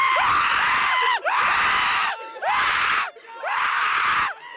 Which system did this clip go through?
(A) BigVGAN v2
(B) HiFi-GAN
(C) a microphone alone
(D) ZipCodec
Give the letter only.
C